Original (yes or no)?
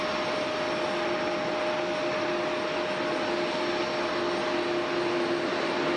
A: yes